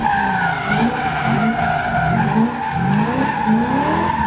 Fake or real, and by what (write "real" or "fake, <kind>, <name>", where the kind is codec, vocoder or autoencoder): real